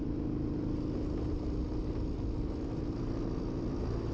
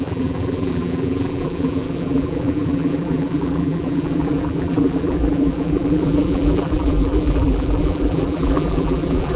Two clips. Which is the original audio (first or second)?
first